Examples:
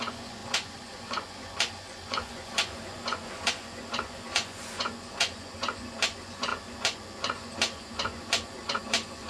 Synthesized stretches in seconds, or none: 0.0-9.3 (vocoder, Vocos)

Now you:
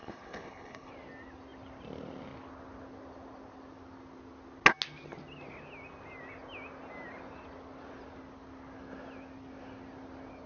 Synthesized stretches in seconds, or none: 0.0-0.9 (codec, HILCodec)

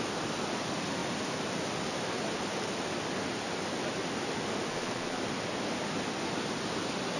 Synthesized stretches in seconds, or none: 4.7-5.2 (vocoder, WaveNeXt)

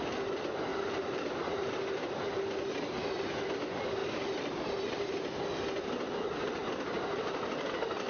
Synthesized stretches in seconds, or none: 0.7-2.0 (vocoder, BigVGAN v2); 4.0-5.4

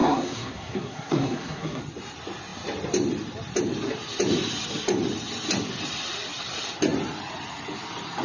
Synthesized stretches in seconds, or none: 0.0-1.8 (codec, SNAC)

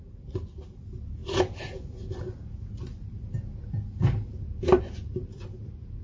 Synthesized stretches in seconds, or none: none

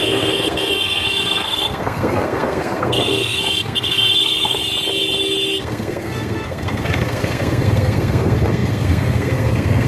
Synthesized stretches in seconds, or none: 0.0-4.6 (codec, SNAC); 5.6-9.9

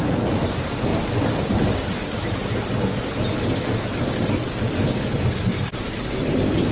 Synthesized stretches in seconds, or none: 0.0-0.9 (vocoder, BigVGAN v2); 1.5-2.4